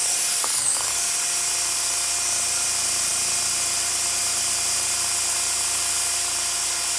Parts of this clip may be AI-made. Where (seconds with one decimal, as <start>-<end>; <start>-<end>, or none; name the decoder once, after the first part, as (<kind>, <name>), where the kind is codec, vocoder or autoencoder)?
0.0-1.1 (codec, DAC)